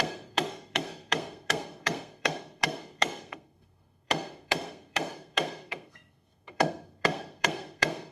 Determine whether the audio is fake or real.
fake